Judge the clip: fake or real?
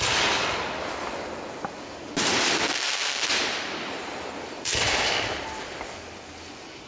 real